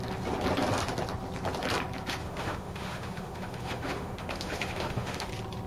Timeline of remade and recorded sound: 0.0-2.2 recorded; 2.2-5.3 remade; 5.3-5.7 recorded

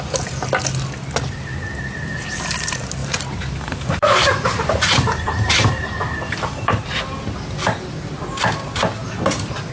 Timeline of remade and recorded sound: 0.0-3.0 recorded; 3.0-7.0 remade; 7.0-9.7 recorded